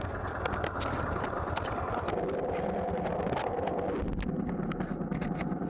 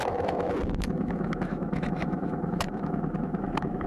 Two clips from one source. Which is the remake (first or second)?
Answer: second